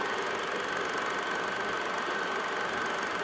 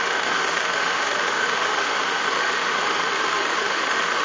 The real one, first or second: first